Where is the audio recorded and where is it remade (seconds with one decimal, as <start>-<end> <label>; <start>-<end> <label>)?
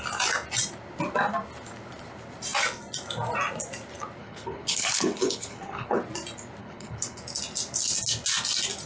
0.0-4.2 recorded; 4.2-6.0 remade; 6.0-6.6 recorded; 6.6-7.2 remade; 7.2-8.9 recorded